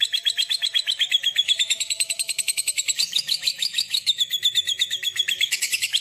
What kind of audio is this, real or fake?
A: fake